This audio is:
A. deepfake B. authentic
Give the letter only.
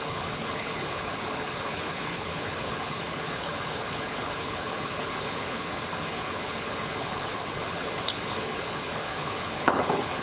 A